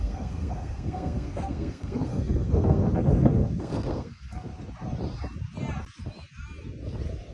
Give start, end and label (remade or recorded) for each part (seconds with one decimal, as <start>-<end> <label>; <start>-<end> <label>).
0.0-4.5 remade; 4.5-7.3 recorded